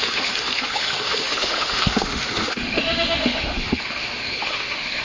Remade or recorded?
remade